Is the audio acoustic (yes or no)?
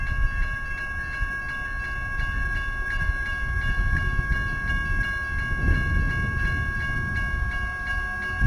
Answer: yes